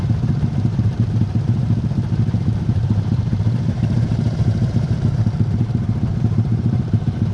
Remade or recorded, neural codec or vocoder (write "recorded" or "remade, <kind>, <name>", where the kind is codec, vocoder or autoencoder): remade, vocoder, BigVGAN v2